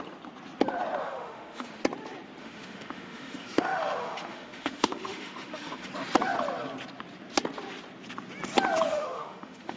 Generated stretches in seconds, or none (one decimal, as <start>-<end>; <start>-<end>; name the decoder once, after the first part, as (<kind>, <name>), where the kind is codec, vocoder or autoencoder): 1.0-1.8 (autoencoder, DAC-VAE); 2.4-5.9; 8.9-9.8